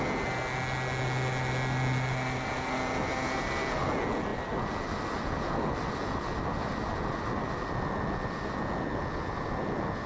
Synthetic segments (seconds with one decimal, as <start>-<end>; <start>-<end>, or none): none